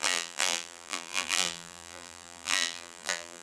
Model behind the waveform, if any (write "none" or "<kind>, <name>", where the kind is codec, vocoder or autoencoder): vocoder, BigVGAN v2